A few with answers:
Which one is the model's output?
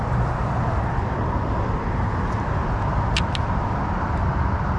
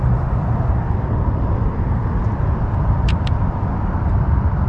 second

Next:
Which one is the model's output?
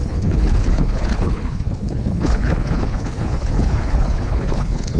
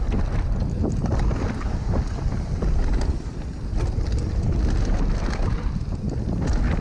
first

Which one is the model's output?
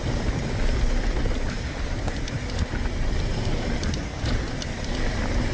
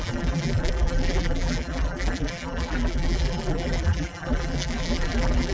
second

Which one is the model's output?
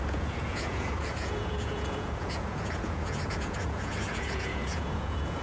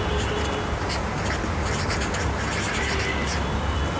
first